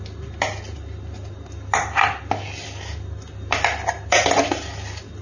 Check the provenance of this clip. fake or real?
real